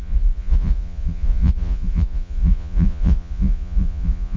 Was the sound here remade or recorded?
remade